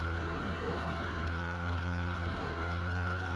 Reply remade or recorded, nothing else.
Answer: remade